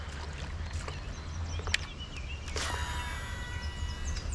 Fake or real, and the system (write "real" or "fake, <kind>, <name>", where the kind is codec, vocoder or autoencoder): real